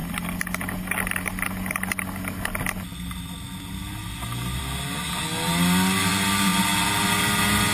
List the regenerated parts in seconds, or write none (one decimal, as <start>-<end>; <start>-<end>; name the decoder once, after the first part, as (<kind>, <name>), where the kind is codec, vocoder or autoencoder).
none